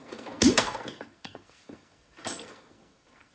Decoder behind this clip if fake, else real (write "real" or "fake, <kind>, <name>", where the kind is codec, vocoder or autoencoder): fake, codec, SNAC